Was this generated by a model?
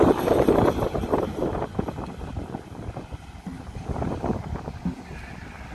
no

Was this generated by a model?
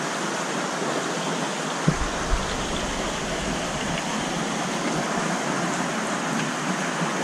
no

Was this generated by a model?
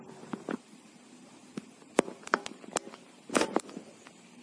no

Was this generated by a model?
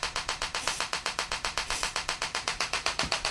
yes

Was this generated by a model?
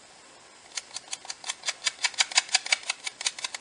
yes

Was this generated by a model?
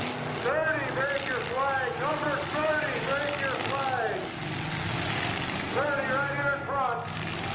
no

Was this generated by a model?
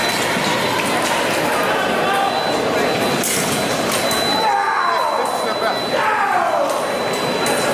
no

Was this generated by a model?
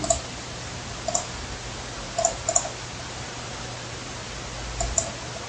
no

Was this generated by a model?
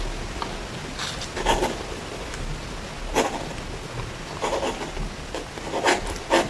no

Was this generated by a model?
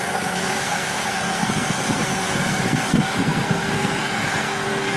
yes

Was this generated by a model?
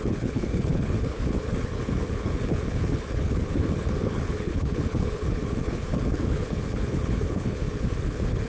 yes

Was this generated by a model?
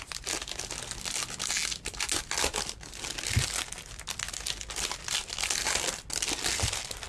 no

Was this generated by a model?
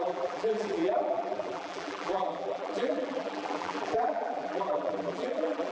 yes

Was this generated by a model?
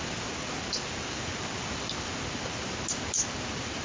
no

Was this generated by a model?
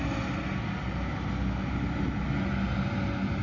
no